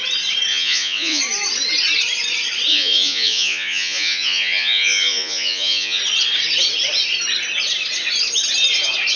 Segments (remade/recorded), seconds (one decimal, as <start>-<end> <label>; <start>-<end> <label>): 0.0-0.5 recorded; 0.5-1.2 remade; 1.2-2.7 recorded; 2.7-6.0 remade; 6.0-9.2 recorded